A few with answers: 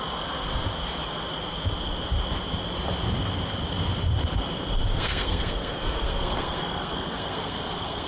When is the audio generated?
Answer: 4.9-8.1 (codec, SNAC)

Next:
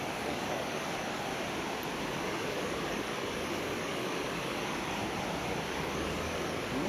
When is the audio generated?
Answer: 0.0-1.3 (codec, DAC); 2.0-5.0; 5.7-6.9

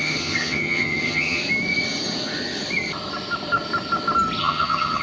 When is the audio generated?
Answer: 0.0-1.4 (vocoder, HiFi-GAN); 4.4-5.0

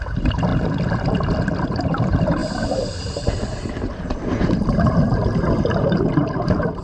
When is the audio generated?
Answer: 0.0-0.5 (vocoder, BigVGAN v2); 1.6-6.8

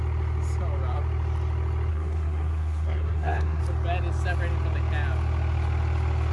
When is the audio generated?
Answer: 1.9-3.6 (codec, SNAC)

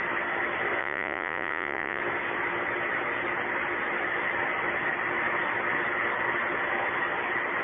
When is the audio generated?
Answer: 0.8-2.0 (vocoder, Vocos)

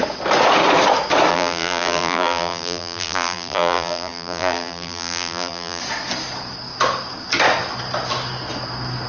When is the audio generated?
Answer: 1.3-5.8 (vocoder, BigVGAN v2)

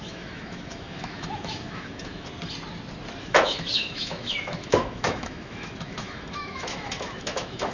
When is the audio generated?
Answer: 0.0-2.3 (autoencoder, DAC-VAE); 3.2-7.7